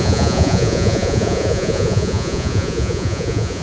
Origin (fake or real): fake